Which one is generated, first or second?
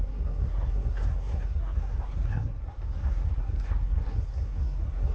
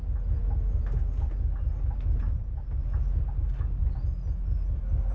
first